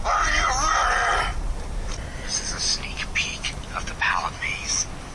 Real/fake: real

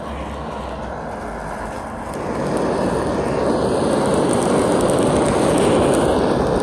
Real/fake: real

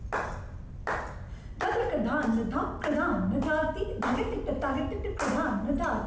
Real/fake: real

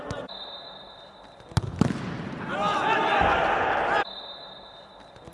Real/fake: real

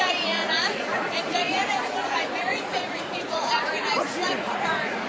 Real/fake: fake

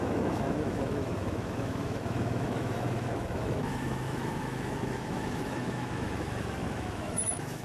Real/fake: fake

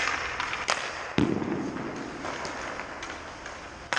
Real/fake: real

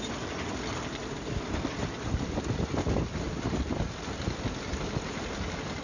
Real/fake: real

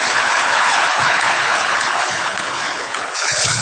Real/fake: fake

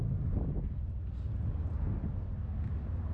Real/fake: real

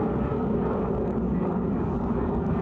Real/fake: fake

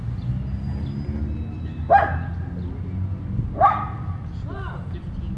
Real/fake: real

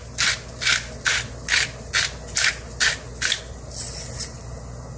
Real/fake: real